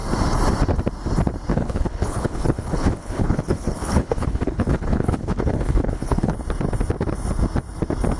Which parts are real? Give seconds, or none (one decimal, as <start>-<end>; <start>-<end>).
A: 0.0-1.5; 6.3-8.2